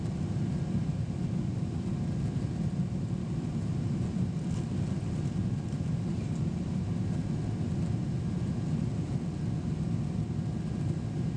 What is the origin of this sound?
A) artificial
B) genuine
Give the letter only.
B